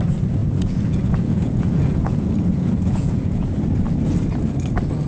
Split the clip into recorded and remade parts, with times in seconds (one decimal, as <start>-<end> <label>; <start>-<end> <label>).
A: 0.0-0.4 recorded; 0.4-3.5 remade; 3.5-5.1 recorded